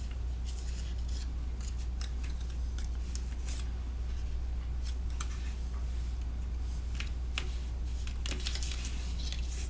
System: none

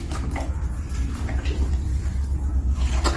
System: none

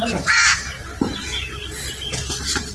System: vocoder, BigVGAN v2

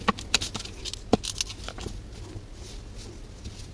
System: none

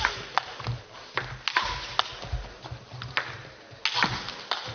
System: none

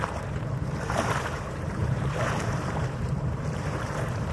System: vocoder, BigVGAN v2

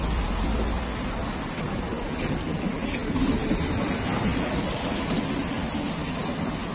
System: none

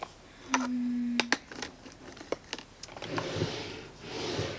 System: none